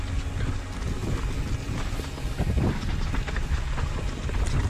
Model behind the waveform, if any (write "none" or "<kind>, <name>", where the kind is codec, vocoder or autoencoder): none